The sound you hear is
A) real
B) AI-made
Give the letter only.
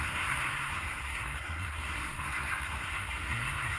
B